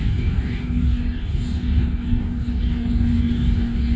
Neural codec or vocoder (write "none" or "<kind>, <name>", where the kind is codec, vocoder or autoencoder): codec, DAC